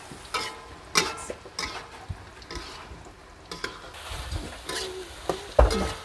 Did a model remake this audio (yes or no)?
no